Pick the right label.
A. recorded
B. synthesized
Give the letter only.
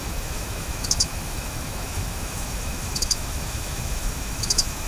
B